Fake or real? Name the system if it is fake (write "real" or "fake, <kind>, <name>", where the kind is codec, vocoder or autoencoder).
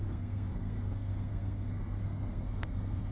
fake, codec, SNAC